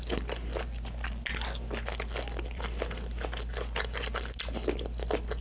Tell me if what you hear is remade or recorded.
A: recorded